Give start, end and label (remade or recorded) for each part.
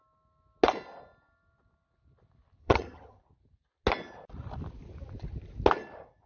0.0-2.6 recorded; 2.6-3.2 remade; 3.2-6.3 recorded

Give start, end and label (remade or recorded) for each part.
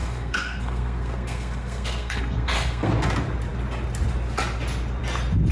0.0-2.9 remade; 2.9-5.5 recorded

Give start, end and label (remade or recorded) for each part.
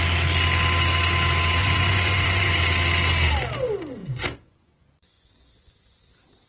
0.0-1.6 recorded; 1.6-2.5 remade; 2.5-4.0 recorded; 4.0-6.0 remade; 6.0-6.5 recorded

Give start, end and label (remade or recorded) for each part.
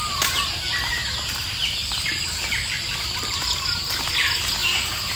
0.0-4.6 recorded; 4.6-5.2 remade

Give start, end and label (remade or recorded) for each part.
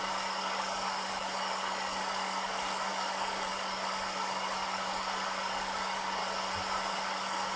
0.0-6.2 remade; 6.2-6.9 recorded; 6.9-7.6 remade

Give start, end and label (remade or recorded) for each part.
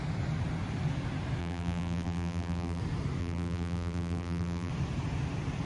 0.0-1.4 recorded; 1.4-2.8 remade; 2.8-3.2 recorded; 3.2-4.7 remade; 4.7-5.7 recorded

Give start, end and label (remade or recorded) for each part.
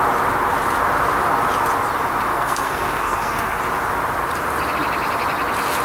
0.0-2.3 recorded; 2.3-3.6 remade; 3.6-5.8 recorded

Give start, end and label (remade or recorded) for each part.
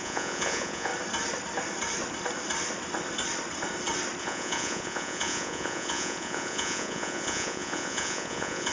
0.0-0.9 remade; 0.9-4.2 recorded; 4.2-8.7 remade